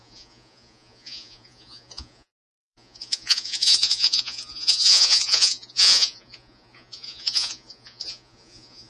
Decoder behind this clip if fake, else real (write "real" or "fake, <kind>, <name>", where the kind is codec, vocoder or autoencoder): fake, vocoder, Vocos